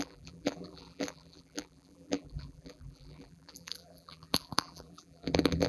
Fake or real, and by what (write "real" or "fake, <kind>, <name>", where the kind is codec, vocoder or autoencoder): fake, vocoder, BigVGAN v2